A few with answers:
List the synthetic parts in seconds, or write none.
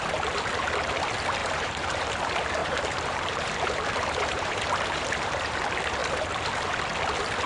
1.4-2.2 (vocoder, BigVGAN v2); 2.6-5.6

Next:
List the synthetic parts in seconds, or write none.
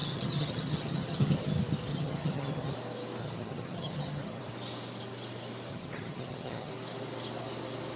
0.0-1.5 (vocoder, HiFi-GAN); 1.9-2.7; 3.2-4.4; 5.7-6.7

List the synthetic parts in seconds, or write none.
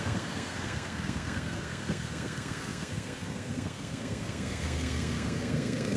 0.0-6.0 (codec, SNAC)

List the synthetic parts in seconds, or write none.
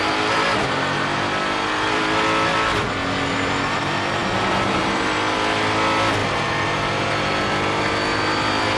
none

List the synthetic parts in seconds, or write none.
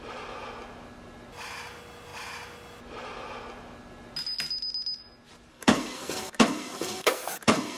5.5-7.8 (codec, SNAC)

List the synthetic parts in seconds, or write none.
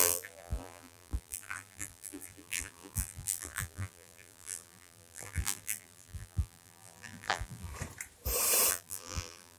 0.0-7.7 (vocoder, BigVGAN v2); 8.7-9.6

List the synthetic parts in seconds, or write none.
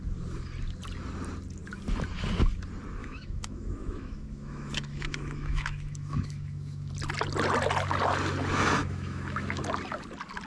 3.0-6.9 (autoencoder, DAC-VAE); 8.8-9.6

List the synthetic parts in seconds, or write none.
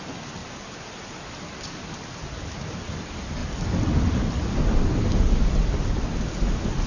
none